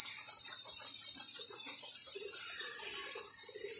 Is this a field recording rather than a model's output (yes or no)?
no